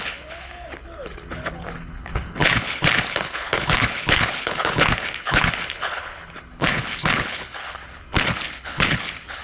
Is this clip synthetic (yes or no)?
yes